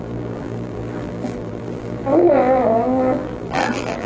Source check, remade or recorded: remade